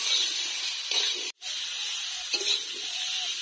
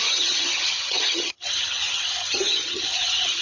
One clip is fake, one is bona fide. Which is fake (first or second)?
second